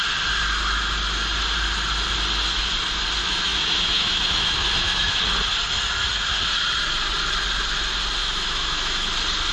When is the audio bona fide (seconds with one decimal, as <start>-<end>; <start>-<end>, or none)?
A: 0.0-3.2; 5.2-8.2; 9.1-9.5